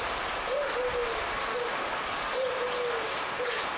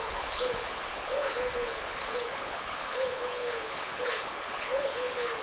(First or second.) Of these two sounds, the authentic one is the first